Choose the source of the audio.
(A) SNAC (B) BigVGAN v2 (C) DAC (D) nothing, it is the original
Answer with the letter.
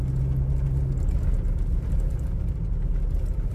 D